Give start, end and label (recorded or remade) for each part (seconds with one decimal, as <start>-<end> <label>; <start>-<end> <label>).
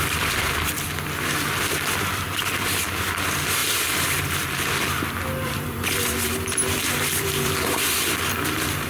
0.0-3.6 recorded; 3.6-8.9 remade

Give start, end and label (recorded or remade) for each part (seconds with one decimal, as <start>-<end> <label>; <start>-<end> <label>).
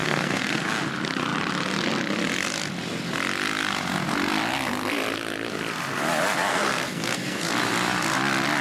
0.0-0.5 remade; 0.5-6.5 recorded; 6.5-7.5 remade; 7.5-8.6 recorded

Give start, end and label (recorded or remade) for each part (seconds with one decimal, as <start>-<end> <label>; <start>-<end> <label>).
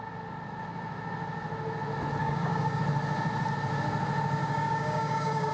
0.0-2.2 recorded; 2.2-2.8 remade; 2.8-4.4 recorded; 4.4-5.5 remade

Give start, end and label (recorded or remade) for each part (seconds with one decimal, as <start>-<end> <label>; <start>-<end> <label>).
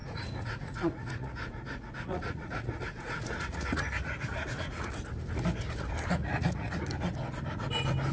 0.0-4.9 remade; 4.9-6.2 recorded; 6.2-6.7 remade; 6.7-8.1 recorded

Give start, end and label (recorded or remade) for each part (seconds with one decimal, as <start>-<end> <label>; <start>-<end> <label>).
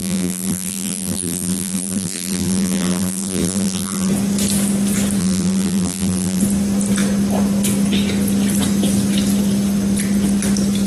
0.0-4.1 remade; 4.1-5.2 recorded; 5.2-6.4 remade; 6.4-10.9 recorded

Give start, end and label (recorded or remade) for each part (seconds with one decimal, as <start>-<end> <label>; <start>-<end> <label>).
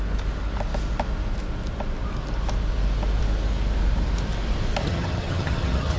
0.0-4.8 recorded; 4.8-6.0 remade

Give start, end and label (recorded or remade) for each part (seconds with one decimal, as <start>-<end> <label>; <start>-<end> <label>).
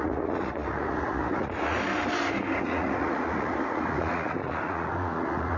0.0-1.9 remade; 1.9-2.6 recorded; 2.6-5.6 remade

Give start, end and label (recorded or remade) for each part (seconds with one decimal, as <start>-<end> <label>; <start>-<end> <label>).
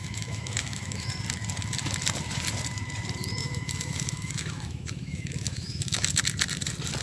0.0-1.1 remade; 1.1-3.4 recorded; 3.4-6.2 remade; 6.2-7.0 recorded